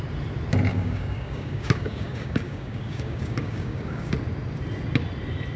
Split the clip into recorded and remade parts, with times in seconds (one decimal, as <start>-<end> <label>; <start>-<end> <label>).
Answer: 0.0-0.7 recorded; 0.7-4.1 remade; 4.1-5.6 recorded